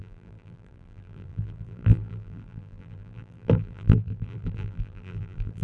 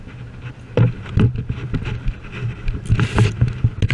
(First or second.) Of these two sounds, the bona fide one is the second